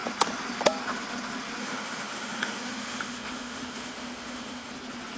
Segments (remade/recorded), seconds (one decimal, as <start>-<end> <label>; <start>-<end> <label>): 0.0-1.6 recorded; 1.6-4.7 remade; 4.7-5.2 recorded